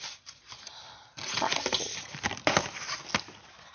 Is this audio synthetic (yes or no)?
no